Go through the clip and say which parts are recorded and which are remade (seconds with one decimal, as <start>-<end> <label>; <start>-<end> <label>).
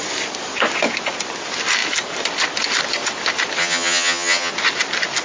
0.0-3.6 recorded; 3.6-4.5 remade; 4.5-5.2 recorded